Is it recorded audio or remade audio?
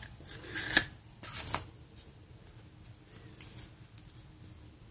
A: recorded